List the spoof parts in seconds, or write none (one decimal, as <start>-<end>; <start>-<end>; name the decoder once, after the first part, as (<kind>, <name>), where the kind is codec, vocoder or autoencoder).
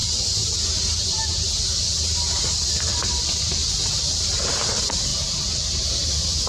0.0-1.0 (vocoder, BigVGAN v2); 3.6-4.5